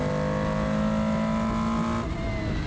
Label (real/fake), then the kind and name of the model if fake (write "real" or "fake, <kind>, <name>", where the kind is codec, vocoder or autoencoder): real